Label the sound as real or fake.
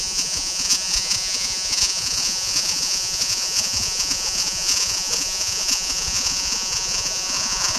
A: fake